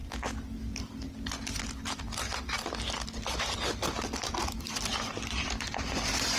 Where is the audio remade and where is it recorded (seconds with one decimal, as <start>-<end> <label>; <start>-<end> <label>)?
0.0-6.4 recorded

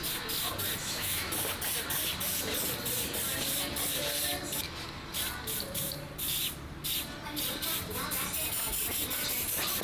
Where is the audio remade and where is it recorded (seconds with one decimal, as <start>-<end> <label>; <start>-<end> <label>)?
0.0-0.8 recorded; 0.8-1.3 remade; 1.3-9.8 recorded

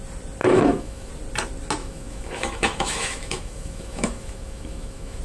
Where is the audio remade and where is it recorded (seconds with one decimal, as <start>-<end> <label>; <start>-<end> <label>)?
0.0-0.4 recorded; 0.4-1.1 remade; 1.1-1.8 recorded; 1.8-5.2 remade

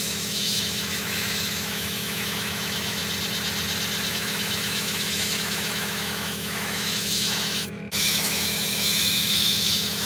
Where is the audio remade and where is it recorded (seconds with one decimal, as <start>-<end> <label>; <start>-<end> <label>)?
0.0-3.0 remade; 3.0-4.1 recorded; 4.1-10.1 remade

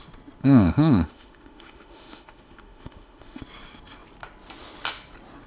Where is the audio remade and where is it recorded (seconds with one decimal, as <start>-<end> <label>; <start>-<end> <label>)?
0.0-0.4 recorded; 0.4-3.4 remade; 3.4-5.5 recorded

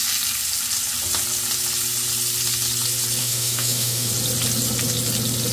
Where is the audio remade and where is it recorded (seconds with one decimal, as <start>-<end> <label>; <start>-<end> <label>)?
0.0-3.2 recorded; 3.2-4.1 remade; 4.1-5.5 recorded

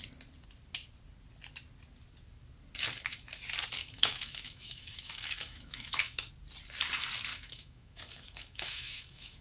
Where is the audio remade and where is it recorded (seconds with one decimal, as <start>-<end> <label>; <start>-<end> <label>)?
0.0-3.8 recorded; 3.8-6.3 remade; 6.3-7.3 recorded; 7.3-9.4 remade